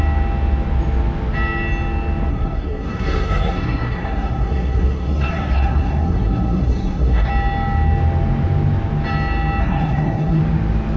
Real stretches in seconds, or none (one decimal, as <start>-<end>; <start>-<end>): 0.0-2.3; 7.3-9.6; 10.4-11.0

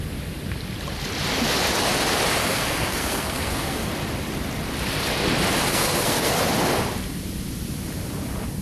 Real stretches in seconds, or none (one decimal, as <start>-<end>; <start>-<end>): 0.0-2.4; 3.9-5.7; 6.4-8.6

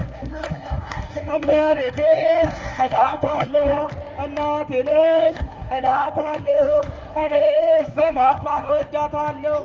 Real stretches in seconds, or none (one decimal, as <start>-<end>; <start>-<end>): 3.9-4.9; 8.9-9.6

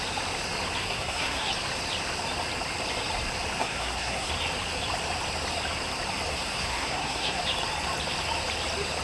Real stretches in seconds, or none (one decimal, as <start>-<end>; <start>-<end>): 0.0-0.8; 1.5-3.6; 4.3-6.3; 7.4-9.0

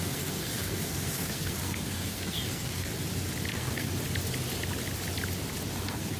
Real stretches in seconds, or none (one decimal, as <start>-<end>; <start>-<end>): 2.9-3.5; 3.9-5.8

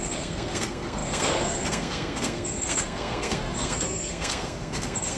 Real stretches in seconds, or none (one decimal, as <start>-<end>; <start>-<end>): none

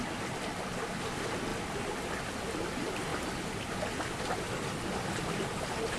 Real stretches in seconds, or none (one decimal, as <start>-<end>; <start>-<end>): 0.0-6.0